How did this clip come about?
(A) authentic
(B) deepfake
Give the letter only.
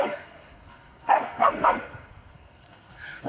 B